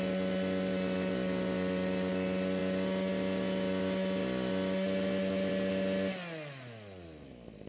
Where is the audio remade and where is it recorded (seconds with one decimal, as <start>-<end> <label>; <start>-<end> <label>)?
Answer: 0.0-7.7 recorded